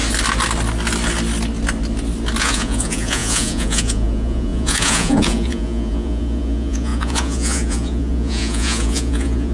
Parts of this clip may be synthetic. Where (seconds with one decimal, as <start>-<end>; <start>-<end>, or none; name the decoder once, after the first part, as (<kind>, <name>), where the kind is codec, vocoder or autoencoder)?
2.4-9.5 (vocoder, Vocos)